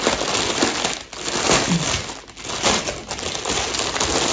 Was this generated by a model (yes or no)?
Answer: no